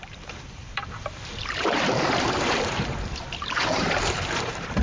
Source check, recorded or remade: remade